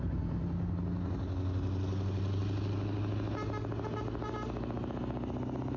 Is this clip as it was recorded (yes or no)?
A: yes